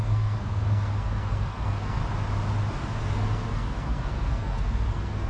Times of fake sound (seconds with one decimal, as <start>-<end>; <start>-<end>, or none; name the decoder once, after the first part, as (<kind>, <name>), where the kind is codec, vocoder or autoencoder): 0.0-2.0 (codec, SNAC); 3.0-5.3